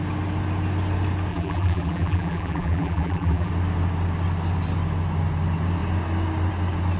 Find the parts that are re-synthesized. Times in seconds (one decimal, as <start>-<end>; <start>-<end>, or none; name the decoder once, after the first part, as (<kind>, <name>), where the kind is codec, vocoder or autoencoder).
1.3-3.5 (vocoder, BigVGAN v2)